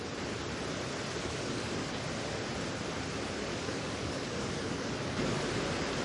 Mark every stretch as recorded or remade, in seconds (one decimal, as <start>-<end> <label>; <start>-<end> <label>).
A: 0.0-1.2 recorded; 1.2-2.0 remade; 2.0-3.5 recorded; 3.5-5.5 remade; 5.5-6.0 recorded